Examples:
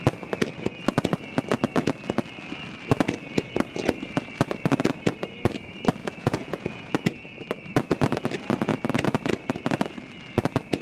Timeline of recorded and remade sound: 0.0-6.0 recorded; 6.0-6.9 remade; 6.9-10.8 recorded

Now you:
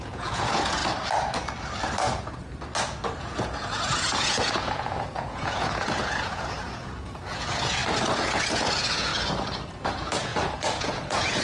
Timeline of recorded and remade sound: 0.0-0.8 remade; 0.8-3.2 recorded; 3.2-9.1 remade; 9.1-9.9 recorded; 9.9-11.4 remade